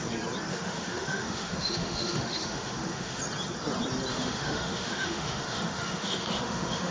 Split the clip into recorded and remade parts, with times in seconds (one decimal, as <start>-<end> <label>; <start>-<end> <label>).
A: 0.0-0.5 recorded; 0.5-3.2 remade; 3.2-4.1 recorded; 4.1-6.9 remade